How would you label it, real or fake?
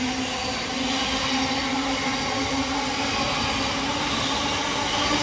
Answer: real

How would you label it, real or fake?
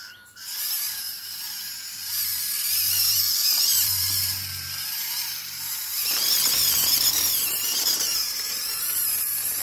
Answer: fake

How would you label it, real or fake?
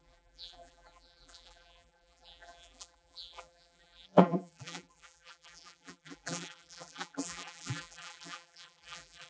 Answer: fake